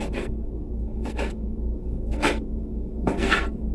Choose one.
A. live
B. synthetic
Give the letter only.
B